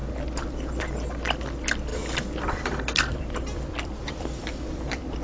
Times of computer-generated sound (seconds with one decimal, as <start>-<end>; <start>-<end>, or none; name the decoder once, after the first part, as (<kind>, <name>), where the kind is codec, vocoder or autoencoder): 1.9-5.2 (vocoder, BigVGAN v2)